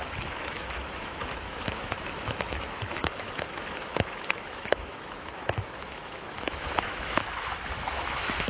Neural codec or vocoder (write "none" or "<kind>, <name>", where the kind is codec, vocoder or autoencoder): autoencoder, DAC-VAE